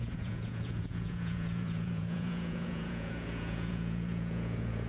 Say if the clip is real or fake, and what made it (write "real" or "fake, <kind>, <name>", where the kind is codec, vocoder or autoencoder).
fake, vocoder, Vocos